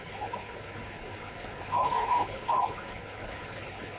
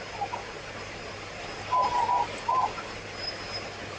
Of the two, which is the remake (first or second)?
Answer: first